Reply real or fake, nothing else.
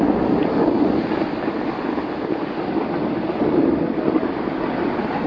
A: real